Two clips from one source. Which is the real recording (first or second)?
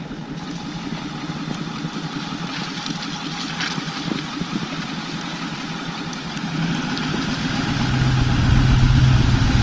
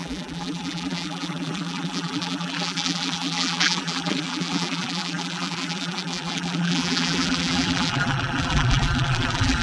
first